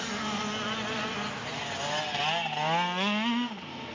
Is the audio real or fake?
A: real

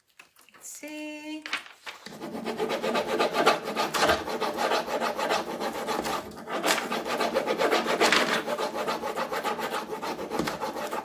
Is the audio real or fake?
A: real